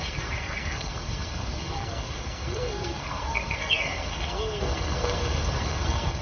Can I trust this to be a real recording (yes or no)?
no